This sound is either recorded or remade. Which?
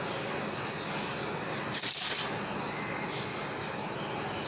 recorded